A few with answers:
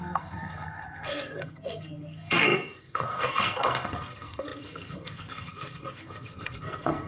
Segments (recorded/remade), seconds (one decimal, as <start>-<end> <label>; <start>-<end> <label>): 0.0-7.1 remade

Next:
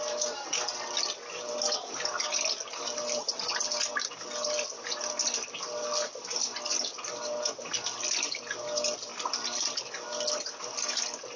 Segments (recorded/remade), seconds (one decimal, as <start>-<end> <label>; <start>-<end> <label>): 0.0-11.4 recorded

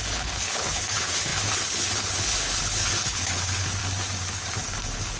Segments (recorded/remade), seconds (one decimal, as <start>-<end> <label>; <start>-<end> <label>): 0.0-3.8 remade; 3.8-4.3 recorded; 4.3-5.2 remade

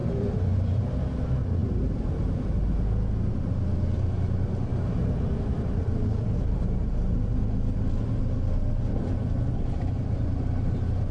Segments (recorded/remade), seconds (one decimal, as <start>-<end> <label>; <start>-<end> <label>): 0.0-0.8 remade; 0.8-4.7 recorded; 4.7-7.3 remade; 7.3-9.4 recorded; 9.4-10.4 remade; 10.4-11.1 recorded

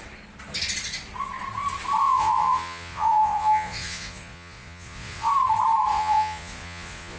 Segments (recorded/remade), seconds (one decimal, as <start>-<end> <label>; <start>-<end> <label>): 0.0-2.0 recorded; 2.0-5.3 remade; 5.3-5.9 recorded; 5.9-7.2 remade